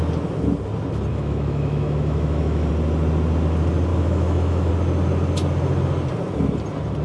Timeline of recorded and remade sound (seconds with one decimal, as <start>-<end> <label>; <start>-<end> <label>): 0.0-1.1 recorded; 1.1-2.7 remade; 2.7-3.9 recorded; 3.9-4.7 remade; 4.7-7.0 recorded